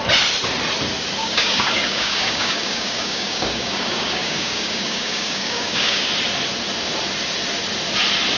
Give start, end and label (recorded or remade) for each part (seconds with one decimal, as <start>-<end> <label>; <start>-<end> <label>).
0.0-1.2 recorded; 1.2-6.1 remade; 6.1-8.4 recorded